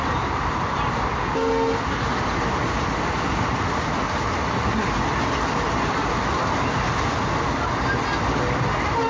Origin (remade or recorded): recorded